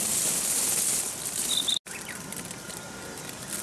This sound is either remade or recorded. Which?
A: recorded